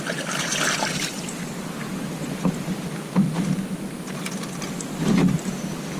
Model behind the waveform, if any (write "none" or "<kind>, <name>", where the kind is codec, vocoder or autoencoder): none